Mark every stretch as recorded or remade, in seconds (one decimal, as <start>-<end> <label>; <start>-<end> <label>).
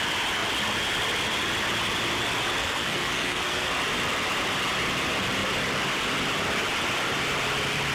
0.0-2.6 recorded; 2.6-3.7 remade; 3.7-7.9 recorded